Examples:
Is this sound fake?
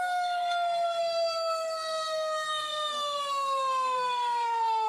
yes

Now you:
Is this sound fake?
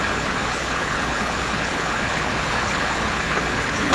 yes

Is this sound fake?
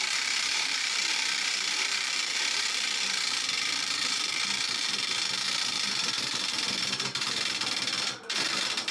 yes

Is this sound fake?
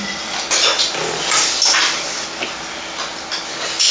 no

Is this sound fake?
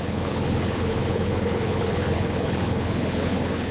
yes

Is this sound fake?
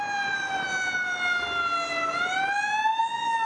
no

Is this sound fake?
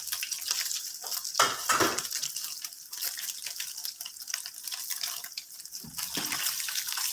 no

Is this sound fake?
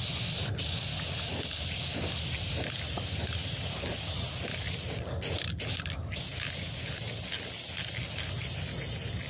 no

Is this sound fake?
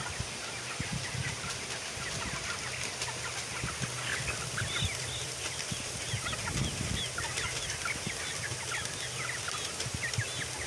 no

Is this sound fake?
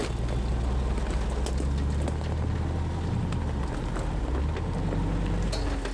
no